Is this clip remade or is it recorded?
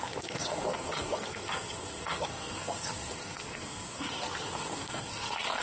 remade